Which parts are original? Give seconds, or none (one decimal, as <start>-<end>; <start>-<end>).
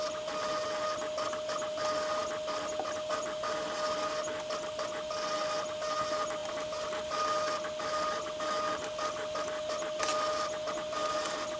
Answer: 0.0-11.6